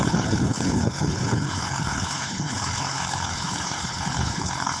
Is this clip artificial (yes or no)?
yes